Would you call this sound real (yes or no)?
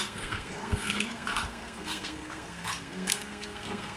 no